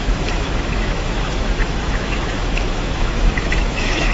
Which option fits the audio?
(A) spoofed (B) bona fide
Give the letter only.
A